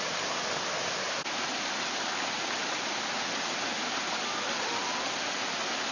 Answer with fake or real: real